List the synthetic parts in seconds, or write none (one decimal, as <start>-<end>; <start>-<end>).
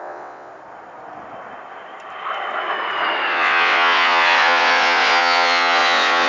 0.0-0.5; 3.3-6.3